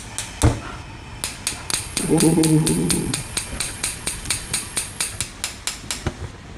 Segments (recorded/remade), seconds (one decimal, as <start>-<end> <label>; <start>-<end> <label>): 0.0-1.7 recorded; 1.7-5.2 remade; 5.2-6.6 recorded